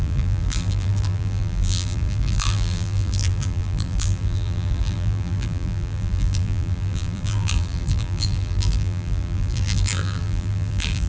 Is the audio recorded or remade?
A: remade